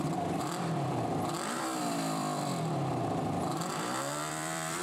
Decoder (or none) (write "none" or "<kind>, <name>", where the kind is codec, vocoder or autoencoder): vocoder, BigVGAN v2